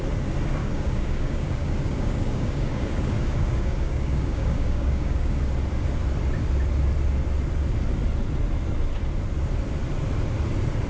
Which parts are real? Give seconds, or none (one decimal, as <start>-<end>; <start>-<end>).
0.0-0.6; 5.4-10.9